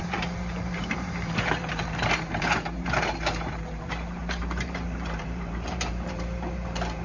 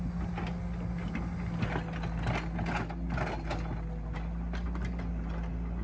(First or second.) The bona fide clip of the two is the second